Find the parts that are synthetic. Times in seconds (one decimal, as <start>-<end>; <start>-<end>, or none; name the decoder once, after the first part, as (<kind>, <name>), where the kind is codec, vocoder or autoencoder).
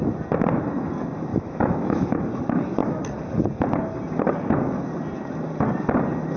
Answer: 1.3-2.2 (autoencoder, DAC-VAE)